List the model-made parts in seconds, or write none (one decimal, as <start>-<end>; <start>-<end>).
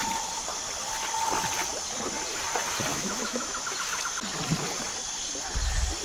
2.9-3.6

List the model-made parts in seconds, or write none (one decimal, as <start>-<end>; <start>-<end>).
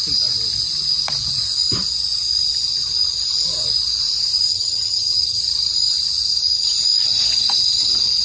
4.5-5.4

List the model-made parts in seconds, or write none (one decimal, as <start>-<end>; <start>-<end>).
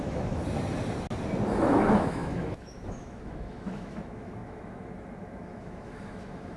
0.0-0.4; 1.6-6.6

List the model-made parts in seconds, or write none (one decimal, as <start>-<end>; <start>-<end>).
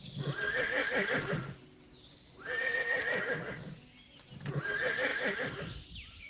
none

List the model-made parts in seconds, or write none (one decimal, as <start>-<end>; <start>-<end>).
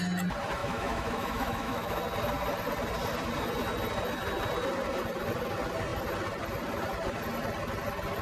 0.6-2.0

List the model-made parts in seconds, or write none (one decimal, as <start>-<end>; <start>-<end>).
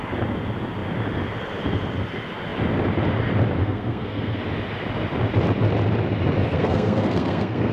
3.6-4.4; 6.4-7.7